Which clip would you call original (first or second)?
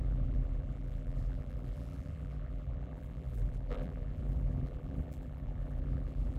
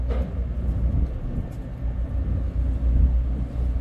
second